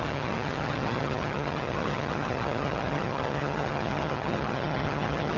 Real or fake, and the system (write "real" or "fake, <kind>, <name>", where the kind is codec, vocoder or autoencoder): fake, vocoder, HiFi-GAN